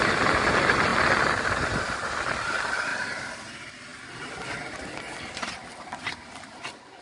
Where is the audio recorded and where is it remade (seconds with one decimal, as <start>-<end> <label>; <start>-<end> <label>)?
0.0-0.9 remade; 0.9-1.6 recorded; 1.6-2.9 remade; 2.9-3.5 recorded; 3.5-3.9 remade; 3.9-5.7 recorded; 5.7-7.0 remade